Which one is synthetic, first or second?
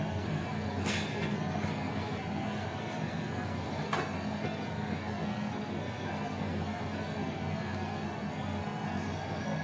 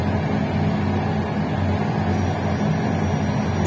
first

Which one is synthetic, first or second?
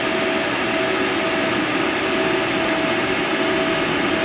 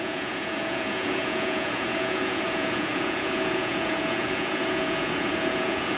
second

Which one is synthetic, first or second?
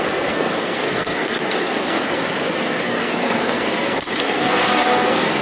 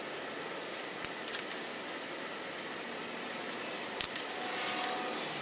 first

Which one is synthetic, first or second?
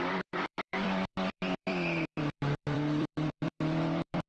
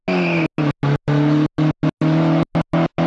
first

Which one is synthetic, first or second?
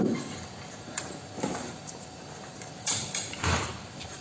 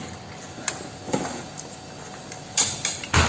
first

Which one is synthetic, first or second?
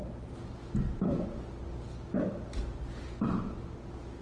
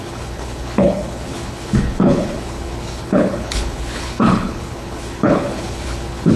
second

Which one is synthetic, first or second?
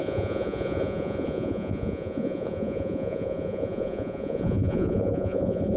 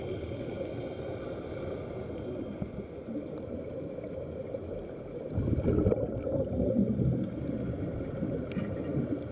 first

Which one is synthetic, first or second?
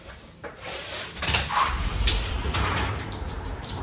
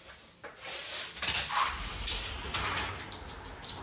first